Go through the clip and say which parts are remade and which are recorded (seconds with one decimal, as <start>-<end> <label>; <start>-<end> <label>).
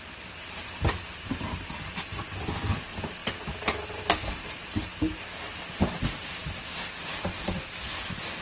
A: 0.0-8.4 recorded